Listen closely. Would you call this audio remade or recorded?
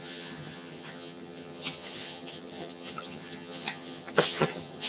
remade